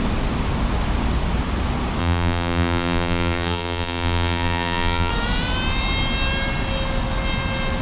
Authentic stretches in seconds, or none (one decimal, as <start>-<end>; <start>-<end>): 0.0-2.0; 5.1-7.8